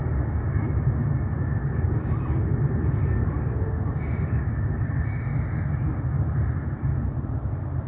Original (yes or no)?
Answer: yes